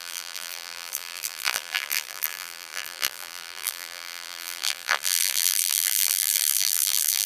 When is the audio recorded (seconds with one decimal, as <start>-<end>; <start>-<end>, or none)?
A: none